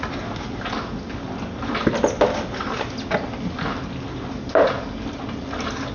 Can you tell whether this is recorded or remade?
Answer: recorded